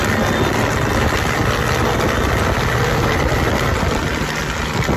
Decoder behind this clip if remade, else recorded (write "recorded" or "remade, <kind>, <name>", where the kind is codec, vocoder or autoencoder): recorded